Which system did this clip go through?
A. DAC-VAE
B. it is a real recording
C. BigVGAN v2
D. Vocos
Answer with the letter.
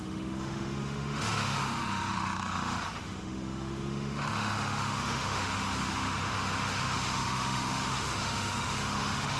A